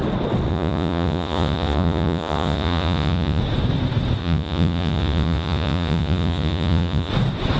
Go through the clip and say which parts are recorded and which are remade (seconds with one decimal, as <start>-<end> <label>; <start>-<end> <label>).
0.0-0.5 recorded; 0.5-3.4 remade; 3.4-4.2 recorded; 4.2-7.1 remade; 7.1-7.6 recorded